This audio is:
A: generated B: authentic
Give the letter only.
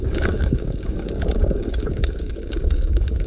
A